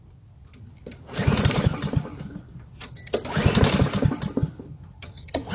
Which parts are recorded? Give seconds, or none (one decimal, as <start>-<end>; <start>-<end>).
0.0-4.7